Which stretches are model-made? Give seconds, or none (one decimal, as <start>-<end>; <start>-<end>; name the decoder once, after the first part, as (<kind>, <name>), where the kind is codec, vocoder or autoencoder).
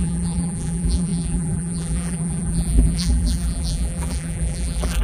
0.0-5.0 (vocoder, BigVGAN v2)